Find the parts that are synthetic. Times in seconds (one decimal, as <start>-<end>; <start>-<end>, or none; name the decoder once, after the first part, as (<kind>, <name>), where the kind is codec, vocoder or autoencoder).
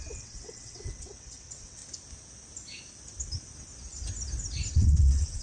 0.0-1.8 (vocoder, WaveNeXt); 4.7-5.4